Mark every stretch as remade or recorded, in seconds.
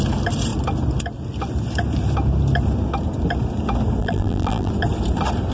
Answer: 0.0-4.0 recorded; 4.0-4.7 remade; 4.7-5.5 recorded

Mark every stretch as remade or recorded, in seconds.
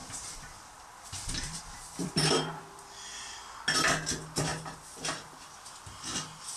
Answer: 0.0-1.6 remade; 1.6-2.0 recorded; 2.0-2.6 remade; 2.6-6.6 recorded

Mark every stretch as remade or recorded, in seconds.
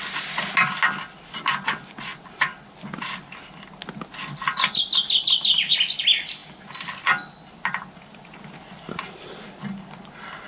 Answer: 0.0-10.5 recorded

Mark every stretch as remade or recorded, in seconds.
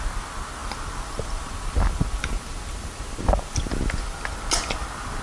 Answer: 0.0-5.2 recorded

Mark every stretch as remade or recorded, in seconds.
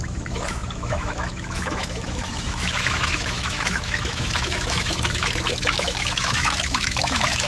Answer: 0.0-7.5 remade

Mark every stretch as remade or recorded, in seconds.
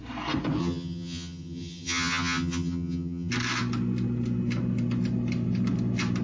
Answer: 0.0-0.6 recorded; 0.6-3.3 remade; 3.3-6.2 recorded